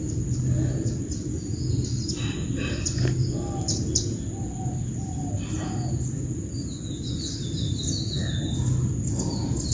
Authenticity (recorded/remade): recorded